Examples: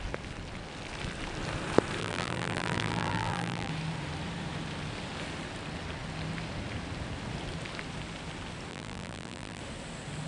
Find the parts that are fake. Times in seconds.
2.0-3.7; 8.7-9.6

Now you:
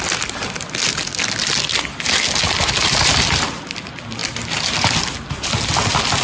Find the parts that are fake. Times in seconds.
4.2-4.9

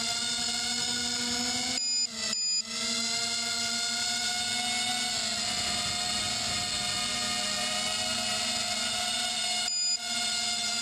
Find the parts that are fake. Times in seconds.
none